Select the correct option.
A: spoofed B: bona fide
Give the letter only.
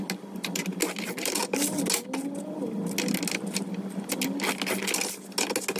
B